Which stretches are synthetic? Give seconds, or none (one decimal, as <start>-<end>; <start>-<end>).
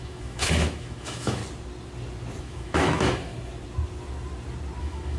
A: 0.0-1.4; 2.4-3.3; 4.8-5.2